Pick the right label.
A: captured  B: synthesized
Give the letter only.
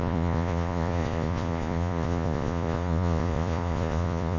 B